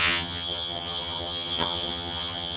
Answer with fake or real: fake